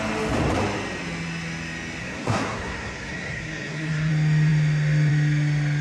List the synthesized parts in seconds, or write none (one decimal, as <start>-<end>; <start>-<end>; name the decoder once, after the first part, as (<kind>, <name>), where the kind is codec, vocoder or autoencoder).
2.0-4.1 (codec, SNAC)